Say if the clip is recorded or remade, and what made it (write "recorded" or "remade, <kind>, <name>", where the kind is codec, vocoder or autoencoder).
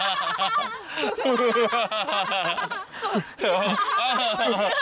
recorded